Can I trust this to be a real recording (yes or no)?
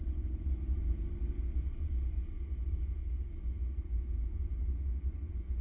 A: yes